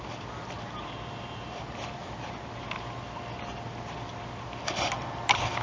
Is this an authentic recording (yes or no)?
yes